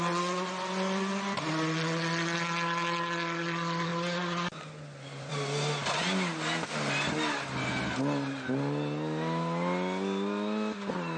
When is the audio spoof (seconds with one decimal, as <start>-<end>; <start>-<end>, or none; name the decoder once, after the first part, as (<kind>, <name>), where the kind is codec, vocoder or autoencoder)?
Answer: none